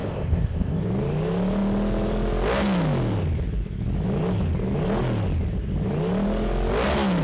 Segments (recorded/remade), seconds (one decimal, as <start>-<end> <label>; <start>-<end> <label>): 0.0-0.8 remade; 0.8-7.2 recorded